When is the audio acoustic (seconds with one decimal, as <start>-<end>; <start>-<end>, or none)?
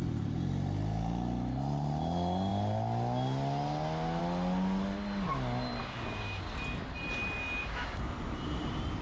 0.0-5.8; 6.5-7.6; 8.1-9.0